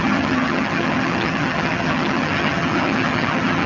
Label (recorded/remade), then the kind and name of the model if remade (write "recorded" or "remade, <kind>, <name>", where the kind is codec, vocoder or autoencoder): remade, vocoder, HiFi-GAN